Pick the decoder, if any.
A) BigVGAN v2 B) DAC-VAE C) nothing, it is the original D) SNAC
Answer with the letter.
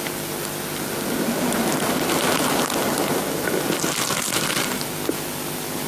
C